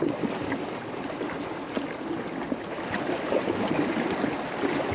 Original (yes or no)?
yes